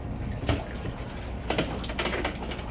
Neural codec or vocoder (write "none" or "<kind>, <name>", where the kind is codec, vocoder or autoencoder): none